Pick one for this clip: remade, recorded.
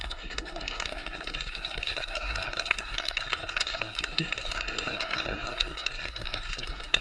remade